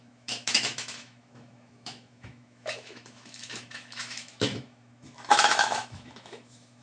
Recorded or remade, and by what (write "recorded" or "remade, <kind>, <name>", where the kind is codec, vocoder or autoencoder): remade, autoencoder, DAC-VAE